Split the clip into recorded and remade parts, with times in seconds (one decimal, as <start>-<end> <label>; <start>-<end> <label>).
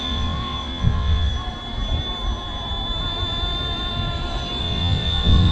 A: 0.0-1.3 remade; 1.3-4.6 recorded; 4.6-5.5 remade